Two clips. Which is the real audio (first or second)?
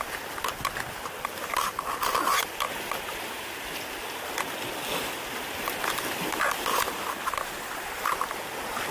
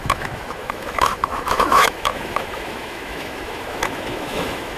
first